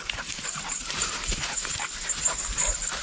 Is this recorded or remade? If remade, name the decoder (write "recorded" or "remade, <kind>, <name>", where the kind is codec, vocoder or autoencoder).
remade, vocoder, BigVGAN v2